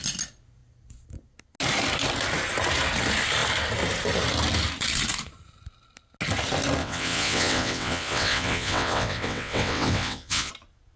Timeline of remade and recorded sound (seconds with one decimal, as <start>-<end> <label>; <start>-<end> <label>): 0.0-6.8 recorded; 6.8-10.5 remade; 10.5-11.0 recorded